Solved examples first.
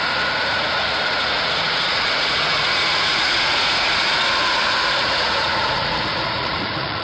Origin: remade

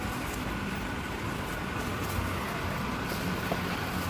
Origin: recorded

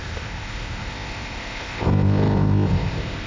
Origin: remade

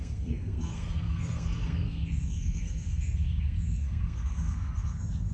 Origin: remade